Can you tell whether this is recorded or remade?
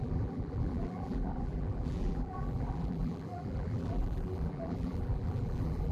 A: remade